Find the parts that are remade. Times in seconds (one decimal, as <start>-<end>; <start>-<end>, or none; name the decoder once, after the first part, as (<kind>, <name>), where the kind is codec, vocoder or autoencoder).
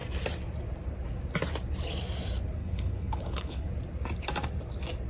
2.6-3.7 (codec, HILCodec)